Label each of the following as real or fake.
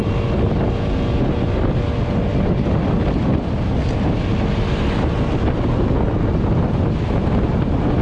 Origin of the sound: real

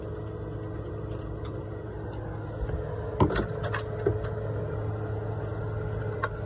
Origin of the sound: real